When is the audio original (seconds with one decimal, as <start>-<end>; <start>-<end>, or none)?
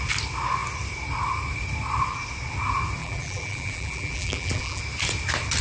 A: 0.0-3.0; 4.8-5.6